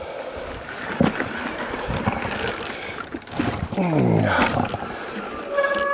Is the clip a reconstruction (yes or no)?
no